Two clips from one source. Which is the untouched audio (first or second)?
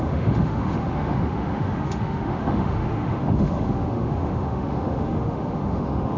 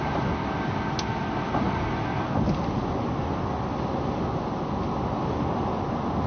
second